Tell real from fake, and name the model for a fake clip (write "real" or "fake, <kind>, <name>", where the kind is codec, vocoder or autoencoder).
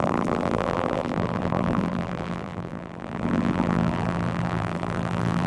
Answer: fake, vocoder, BigVGAN v2